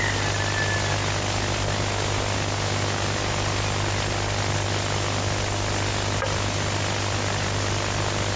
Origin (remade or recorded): recorded